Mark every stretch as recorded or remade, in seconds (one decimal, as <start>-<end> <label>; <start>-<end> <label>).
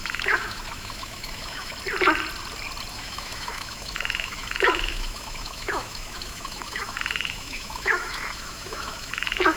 0.0-1.7 remade; 1.7-2.9 recorded; 2.9-9.6 remade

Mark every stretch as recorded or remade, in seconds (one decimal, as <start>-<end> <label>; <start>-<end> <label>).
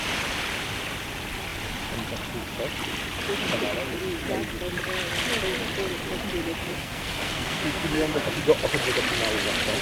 0.0-6.6 recorded; 6.6-8.4 remade; 8.4-9.8 recorded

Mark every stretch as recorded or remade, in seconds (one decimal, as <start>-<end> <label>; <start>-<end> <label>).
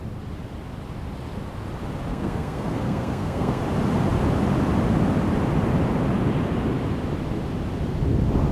0.0-2.1 recorded; 2.1-3.6 remade; 3.6-8.5 recorded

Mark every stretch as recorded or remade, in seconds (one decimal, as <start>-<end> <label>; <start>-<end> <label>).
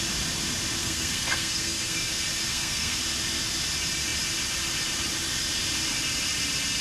0.0-0.8 recorded; 0.8-2.1 remade; 2.1-2.5 recorded; 2.5-3.0 remade; 3.0-6.8 recorded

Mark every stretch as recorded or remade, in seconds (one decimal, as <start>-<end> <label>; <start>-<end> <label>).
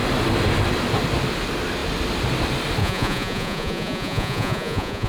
0.0-2.8 recorded; 2.8-5.1 remade